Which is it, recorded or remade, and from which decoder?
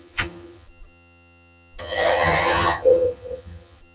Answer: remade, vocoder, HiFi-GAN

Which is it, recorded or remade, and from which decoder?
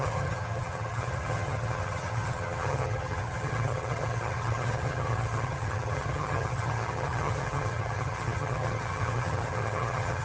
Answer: remade, vocoder, HiFi-GAN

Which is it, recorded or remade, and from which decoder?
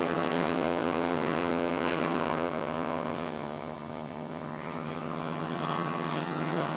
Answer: remade, vocoder, HiFi-GAN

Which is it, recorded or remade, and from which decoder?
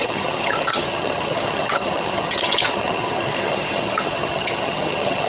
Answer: remade, vocoder, HiFi-GAN